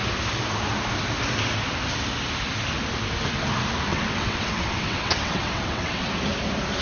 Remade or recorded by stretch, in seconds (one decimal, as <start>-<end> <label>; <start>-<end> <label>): 0.0-3.9 recorded; 3.9-6.1 remade; 6.1-6.8 recorded